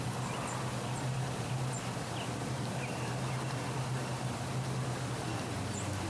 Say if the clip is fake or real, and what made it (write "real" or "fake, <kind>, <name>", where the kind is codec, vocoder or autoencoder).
real